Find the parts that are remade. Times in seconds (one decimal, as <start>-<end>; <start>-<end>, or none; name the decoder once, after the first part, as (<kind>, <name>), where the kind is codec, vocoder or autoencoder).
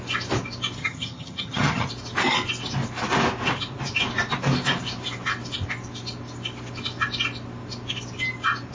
0.8-1.9 (vocoder, HiFi-GAN)